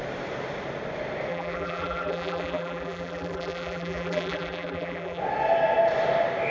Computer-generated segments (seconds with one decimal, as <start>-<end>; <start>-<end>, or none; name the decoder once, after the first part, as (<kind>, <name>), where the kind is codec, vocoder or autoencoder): 1.3-5.2 (vocoder, BigVGAN v2)